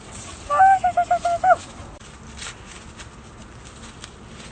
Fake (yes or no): no